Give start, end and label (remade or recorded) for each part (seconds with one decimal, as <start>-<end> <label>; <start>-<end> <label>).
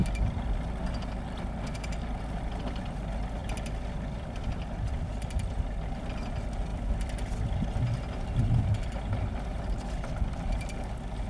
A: 0.0-3.4 recorded; 3.4-5.9 remade; 5.9-6.7 recorded; 6.7-7.5 remade; 7.5-11.3 recorded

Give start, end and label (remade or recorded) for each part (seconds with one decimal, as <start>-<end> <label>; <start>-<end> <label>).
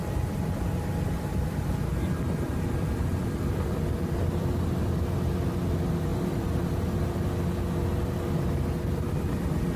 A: 0.0-4.6 remade; 4.6-6.1 recorded; 6.1-6.8 remade; 6.8-9.8 recorded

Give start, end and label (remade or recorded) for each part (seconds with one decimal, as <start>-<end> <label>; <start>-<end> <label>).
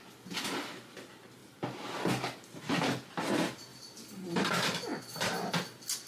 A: 0.0-3.7 recorded; 3.7-4.5 remade; 4.5-6.1 recorded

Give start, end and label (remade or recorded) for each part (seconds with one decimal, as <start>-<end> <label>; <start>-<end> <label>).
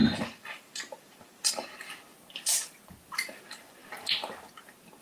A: 0.0-2.1 recorded; 2.1-3.4 remade; 3.4-5.0 recorded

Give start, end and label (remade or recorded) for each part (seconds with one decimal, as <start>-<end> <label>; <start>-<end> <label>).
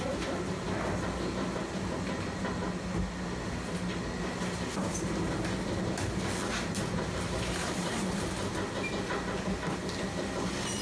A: 0.0-6.5 recorded; 6.5-8.2 remade; 8.2-10.8 recorded